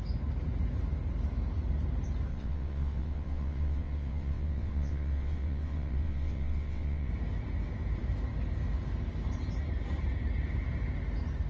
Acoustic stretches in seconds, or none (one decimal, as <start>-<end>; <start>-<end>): 0.0-2.3; 7.1-11.5